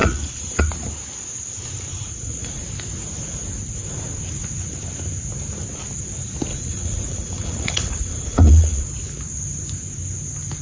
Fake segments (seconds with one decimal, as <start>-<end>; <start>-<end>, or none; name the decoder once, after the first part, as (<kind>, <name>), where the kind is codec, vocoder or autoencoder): 0.0-0.6 (vocoder, Vocos); 1.9-2.6; 6.5-8.8